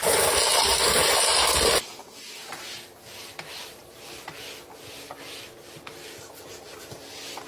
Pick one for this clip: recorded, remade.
recorded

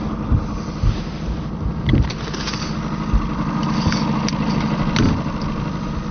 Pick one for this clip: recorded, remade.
recorded